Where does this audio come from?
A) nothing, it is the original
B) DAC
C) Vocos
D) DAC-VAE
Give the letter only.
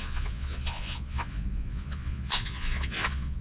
C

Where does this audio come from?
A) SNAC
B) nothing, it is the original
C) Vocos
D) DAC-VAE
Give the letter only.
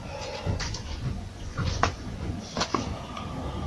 C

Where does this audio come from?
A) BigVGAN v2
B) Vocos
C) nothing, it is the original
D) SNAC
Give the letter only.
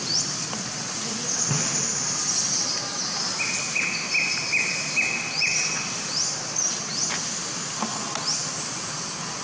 C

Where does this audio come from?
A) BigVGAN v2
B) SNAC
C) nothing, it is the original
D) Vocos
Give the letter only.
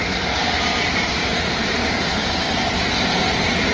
C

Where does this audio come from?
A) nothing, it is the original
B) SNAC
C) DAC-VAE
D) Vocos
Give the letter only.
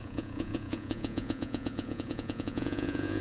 D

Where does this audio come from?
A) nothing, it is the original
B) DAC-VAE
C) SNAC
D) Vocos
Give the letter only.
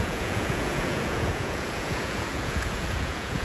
D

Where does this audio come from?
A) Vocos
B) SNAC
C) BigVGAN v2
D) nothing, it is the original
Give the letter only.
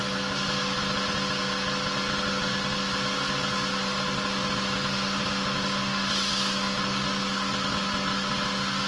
D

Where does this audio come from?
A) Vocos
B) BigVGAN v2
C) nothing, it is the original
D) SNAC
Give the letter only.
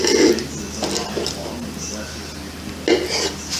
C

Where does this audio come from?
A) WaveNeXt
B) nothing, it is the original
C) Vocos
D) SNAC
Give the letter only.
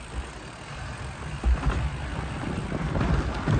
B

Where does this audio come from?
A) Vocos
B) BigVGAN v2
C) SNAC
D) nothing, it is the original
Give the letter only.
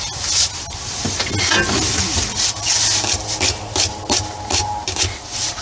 D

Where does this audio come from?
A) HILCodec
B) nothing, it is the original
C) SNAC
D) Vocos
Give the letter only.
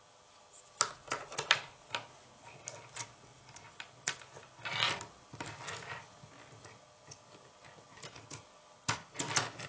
B